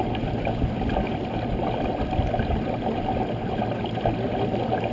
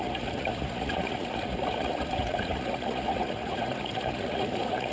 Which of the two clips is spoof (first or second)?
second